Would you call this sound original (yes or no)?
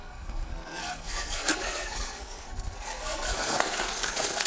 no